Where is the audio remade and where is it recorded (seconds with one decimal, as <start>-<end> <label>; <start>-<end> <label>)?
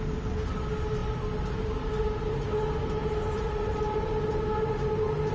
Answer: 0.0-5.3 recorded